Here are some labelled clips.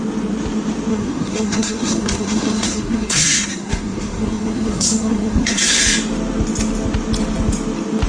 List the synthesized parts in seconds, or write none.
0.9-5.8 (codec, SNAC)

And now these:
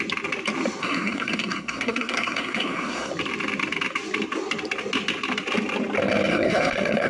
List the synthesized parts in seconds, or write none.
0.8-3.1 (codec, SNAC); 6.3-7.1

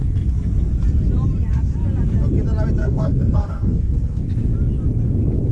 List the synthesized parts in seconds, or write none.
2.8-4.2 (codec, SNAC)